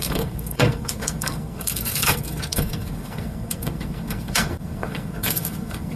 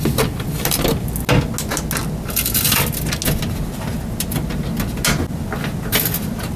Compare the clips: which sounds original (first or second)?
second